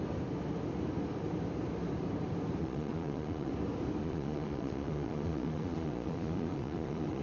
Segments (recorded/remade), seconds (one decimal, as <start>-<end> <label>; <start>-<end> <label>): 0.0-2.6 recorded; 2.6-3.5 remade; 3.5-4.0 recorded; 4.0-7.2 remade